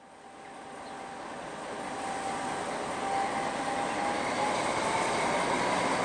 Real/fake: real